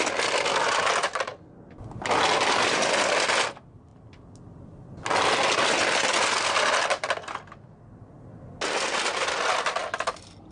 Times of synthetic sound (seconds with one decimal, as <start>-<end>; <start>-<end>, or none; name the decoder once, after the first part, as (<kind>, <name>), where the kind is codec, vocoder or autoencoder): none